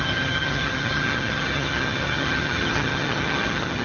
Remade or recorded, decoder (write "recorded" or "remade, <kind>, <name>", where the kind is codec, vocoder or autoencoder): remade, vocoder, HiFi-GAN